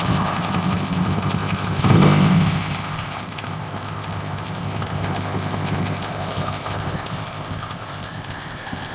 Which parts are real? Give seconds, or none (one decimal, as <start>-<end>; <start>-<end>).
none